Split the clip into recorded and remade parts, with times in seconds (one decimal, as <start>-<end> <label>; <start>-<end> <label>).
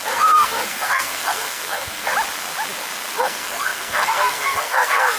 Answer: 0.0-2.1 remade; 2.1-3.2 recorded; 3.2-5.2 remade